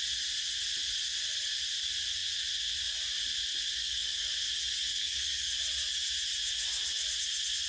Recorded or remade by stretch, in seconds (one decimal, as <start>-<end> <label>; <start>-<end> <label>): 0.0-3.8 recorded; 3.8-4.3 remade; 4.3-4.9 recorded; 4.9-5.5 remade; 5.5-7.7 recorded